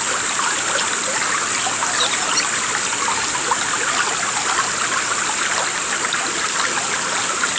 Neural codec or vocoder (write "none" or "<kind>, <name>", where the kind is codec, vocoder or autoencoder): none